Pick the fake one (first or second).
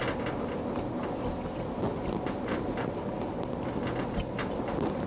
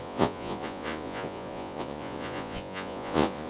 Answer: second